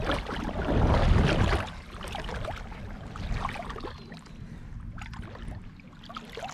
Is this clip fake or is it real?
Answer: real